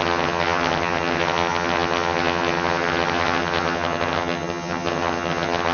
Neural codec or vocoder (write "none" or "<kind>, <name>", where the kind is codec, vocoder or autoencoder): vocoder, HiFi-GAN